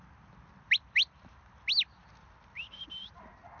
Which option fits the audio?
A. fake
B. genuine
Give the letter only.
B